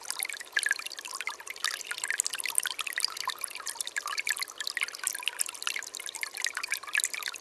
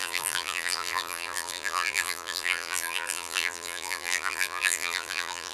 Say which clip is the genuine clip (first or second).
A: first